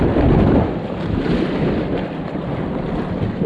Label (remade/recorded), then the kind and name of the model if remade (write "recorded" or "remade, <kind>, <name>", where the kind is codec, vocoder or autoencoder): remade, vocoder, BigVGAN v2